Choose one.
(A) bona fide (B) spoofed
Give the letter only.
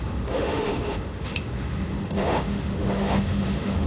B